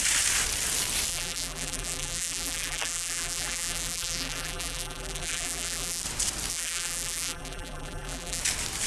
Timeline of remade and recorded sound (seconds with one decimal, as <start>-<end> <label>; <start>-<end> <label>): 0.0-1.1 recorded; 1.1-6.0 remade; 6.0-6.5 recorded; 6.5-8.4 remade; 8.4-8.9 recorded